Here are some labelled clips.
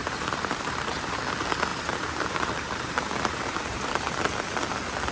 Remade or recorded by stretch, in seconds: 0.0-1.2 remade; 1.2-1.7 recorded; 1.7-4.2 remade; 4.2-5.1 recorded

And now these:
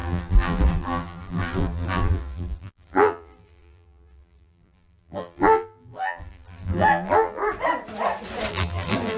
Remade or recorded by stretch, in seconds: 0.0-7.4 remade; 7.4-8.5 recorded; 8.5-9.2 remade

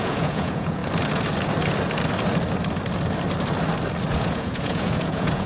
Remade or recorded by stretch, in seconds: 0.0-0.8 remade; 0.8-4.1 recorded; 4.1-5.5 remade

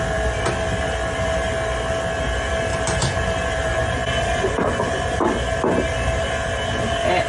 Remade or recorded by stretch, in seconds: 0.0-7.3 recorded

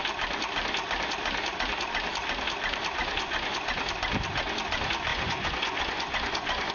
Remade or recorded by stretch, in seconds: 0.0-3.0 recorded; 3.0-3.8 remade; 3.8-5.1 recorded; 5.1-6.7 remade

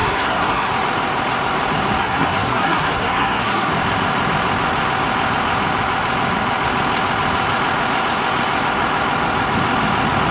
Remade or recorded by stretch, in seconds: 0.0-0.7 remade; 0.7-2.0 recorded; 2.0-3.7 remade; 3.7-10.3 recorded

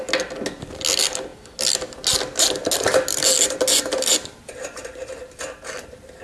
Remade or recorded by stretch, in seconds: 0.0-6.2 recorded